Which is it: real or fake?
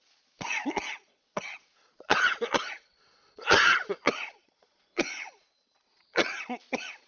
fake